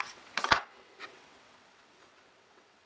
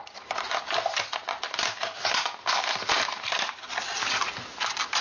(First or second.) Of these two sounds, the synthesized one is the first